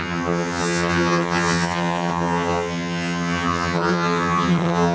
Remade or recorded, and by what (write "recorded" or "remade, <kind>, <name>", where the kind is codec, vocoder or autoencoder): remade, vocoder, HiFi-GAN